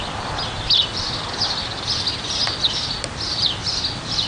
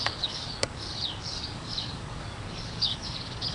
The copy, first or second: second